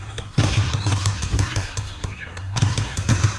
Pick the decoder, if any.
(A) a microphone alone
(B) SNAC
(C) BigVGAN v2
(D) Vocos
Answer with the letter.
B